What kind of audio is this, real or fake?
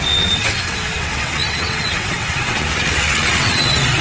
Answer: fake